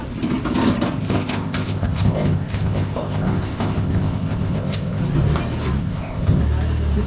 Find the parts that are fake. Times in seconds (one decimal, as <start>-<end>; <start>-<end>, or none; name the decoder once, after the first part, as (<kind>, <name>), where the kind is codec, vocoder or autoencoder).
1.0-5.0 (codec, ZipCodec); 5.8-6.4